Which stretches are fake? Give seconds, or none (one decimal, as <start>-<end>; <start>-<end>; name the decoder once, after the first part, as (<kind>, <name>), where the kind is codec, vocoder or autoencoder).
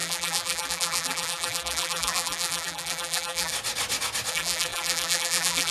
0.0-3.5 (vocoder, BigVGAN v2); 4.3-5.7